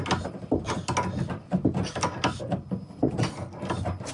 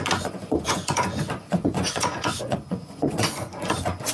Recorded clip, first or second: first